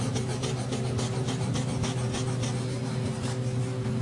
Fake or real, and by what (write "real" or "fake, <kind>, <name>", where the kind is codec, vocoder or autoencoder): real